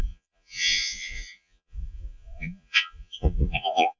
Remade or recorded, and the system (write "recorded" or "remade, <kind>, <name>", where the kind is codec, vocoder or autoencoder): remade, vocoder, Vocos